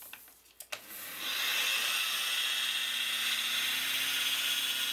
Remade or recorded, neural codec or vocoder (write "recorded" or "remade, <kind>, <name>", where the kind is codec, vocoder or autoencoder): recorded